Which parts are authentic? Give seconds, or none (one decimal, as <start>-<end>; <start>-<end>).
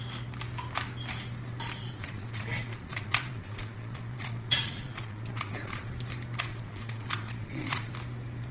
0.0-1.8; 5.9-6.5; 7.9-8.5